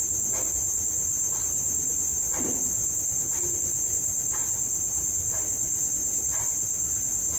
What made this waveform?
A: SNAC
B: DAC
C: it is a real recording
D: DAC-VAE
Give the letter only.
C